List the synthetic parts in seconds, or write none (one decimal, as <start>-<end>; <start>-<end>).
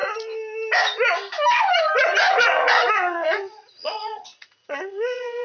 2.3-5.4